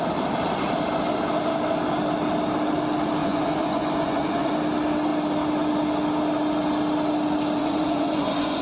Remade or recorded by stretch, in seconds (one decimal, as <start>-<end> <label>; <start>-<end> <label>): 0.0-3.2 recorded; 3.2-4.5 remade; 4.5-7.6 recorded; 7.6-8.6 remade